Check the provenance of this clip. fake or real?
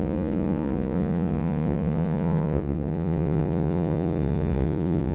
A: fake